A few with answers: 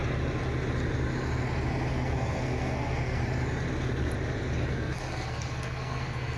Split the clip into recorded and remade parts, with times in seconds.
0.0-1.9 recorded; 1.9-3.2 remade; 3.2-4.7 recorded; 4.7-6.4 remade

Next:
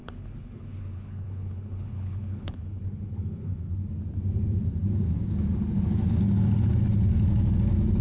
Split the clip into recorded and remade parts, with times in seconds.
0.0-3.7 remade; 3.7-8.0 recorded

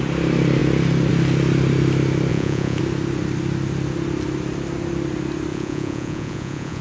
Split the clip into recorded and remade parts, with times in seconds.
0.0-2.3 recorded; 2.3-2.8 remade; 2.8-5.5 recorded; 5.5-6.8 remade

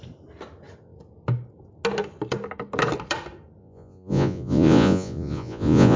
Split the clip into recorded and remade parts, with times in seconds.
0.0-3.6 recorded; 3.6-6.0 remade

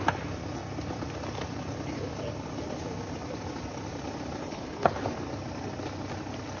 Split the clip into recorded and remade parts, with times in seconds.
0.0-4.4 recorded; 4.4-4.9 remade; 4.9-6.6 recorded